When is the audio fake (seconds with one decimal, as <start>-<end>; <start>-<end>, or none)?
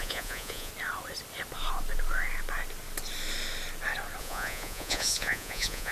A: 0.0-0.7; 4.2-5.9